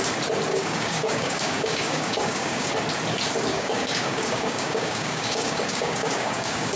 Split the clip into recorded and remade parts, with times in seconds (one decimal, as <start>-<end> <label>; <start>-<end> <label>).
0.0-0.5 recorded; 0.5-2.7 remade; 2.7-3.5 recorded; 3.5-6.8 remade